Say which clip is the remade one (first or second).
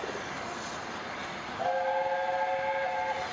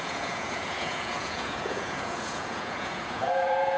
second